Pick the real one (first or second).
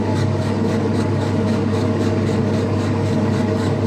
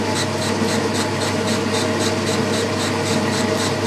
second